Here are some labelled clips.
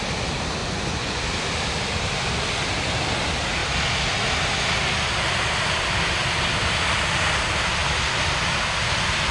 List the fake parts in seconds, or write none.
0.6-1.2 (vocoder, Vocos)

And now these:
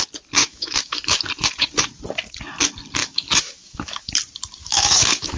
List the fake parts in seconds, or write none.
0.4-1.2 (autoencoder, DAC-VAE); 3.0-4.1; 4.6-5.4

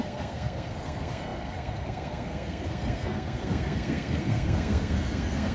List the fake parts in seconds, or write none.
0.0-5.5 (codec, SNAC)